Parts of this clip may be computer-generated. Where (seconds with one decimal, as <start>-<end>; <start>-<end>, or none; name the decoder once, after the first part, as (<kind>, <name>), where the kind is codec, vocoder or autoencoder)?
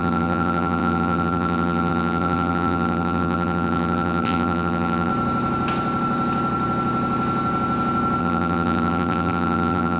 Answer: 0.0-5.1 (vocoder, BigVGAN v2); 8.2-10.0